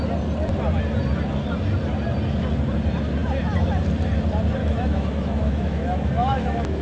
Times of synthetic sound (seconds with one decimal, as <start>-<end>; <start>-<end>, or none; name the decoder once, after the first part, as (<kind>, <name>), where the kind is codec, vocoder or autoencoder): 4.6-6.8 (autoencoder, DAC-VAE)